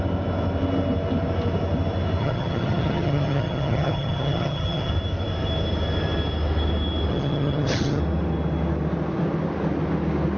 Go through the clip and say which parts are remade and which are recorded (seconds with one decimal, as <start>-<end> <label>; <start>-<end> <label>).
0.0-2.2 recorded; 2.2-4.9 remade; 4.9-7.1 recorded; 7.1-8.0 remade; 8.0-10.4 recorded